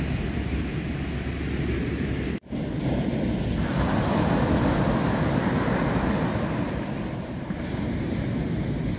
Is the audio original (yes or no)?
yes